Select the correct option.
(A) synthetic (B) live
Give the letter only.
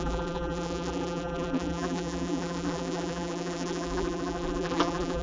A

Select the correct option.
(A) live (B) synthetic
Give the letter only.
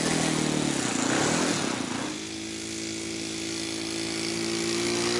A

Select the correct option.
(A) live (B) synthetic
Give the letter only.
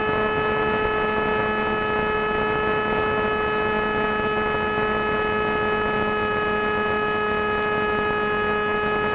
A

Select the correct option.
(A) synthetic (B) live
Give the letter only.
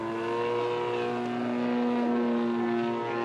B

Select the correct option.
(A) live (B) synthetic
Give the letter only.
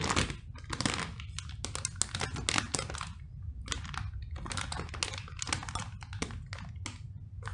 A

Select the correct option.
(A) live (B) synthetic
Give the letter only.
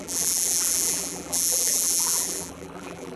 B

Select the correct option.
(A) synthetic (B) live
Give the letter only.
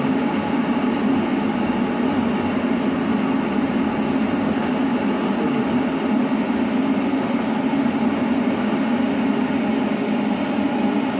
B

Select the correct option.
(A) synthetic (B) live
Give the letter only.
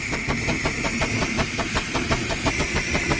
B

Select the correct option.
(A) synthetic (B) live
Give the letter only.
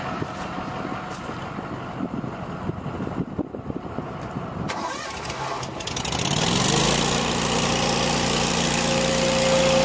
B